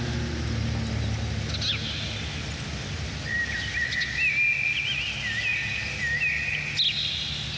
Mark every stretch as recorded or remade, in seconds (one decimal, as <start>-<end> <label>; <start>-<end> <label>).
0.0-7.6 recorded